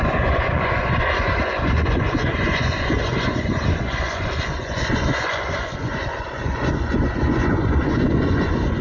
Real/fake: fake